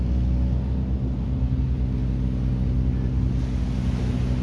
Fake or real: real